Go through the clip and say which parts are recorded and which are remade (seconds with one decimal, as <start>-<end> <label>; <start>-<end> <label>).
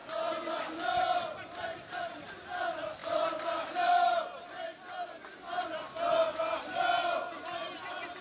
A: 0.0-3.0 recorded; 3.0-3.7 remade; 3.7-8.2 recorded